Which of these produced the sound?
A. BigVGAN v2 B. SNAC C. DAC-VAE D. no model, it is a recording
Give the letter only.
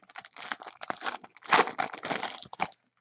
D